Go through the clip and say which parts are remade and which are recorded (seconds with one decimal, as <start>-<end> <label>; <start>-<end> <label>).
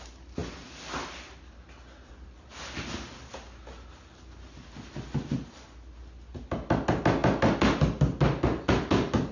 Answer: 0.0-9.3 recorded